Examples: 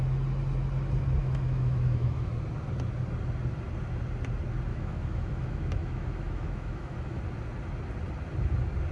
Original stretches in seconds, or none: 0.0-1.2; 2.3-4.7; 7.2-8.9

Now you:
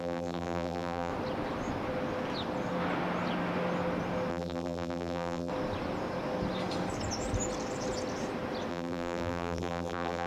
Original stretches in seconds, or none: 1.1-4.3; 5.5-8.7

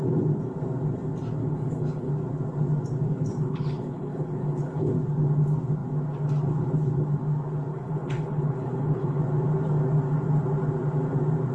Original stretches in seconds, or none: 0.0-1.4; 2.1-3.3; 4.9-7.7; 9.2-11.5